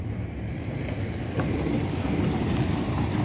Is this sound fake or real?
fake